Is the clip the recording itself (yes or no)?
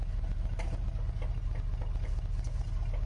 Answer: yes